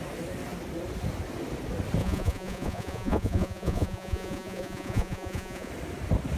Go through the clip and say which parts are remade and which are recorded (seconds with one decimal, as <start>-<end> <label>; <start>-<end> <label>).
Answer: 0.0-2.0 recorded; 2.0-5.7 remade; 5.7-6.4 recorded